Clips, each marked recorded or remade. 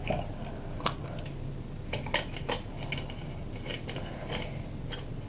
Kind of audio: recorded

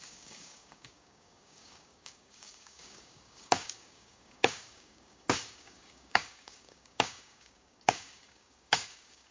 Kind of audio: remade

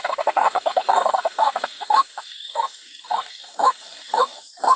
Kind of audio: remade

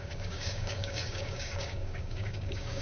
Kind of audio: remade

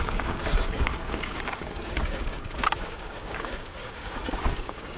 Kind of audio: remade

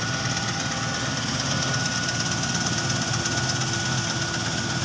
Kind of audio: recorded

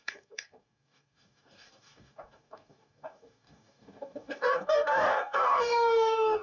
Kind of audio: remade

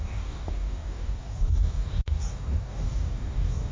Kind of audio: remade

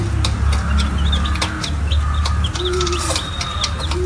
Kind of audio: recorded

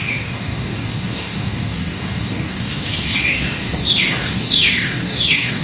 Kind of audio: remade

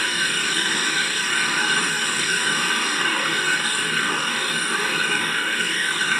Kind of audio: remade